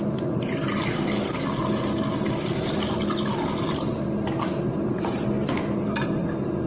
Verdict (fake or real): real